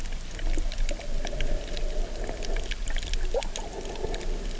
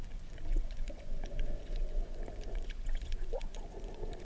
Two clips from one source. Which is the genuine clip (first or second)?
first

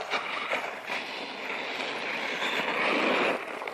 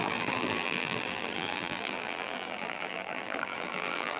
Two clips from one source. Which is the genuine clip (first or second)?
first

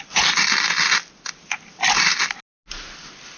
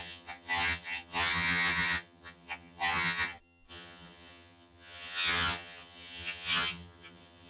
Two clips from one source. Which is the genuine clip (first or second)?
first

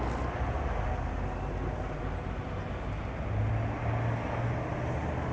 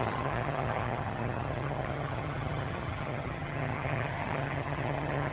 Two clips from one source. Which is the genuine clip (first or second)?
first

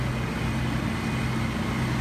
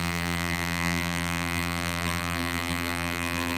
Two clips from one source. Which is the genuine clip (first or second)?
first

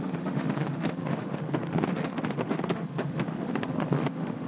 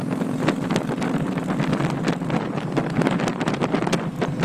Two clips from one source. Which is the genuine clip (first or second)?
second